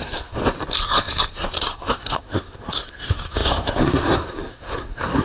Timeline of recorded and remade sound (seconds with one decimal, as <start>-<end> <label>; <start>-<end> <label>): 0.0-0.4 remade; 0.4-1.6 recorded; 1.6-5.2 remade